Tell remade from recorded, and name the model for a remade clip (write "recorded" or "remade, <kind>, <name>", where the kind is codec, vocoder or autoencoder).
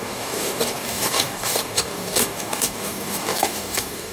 remade, codec, DAC